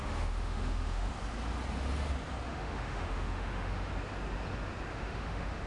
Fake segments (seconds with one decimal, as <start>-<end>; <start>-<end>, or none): 0.0-1.1; 2.5-3.9; 4.9-5.7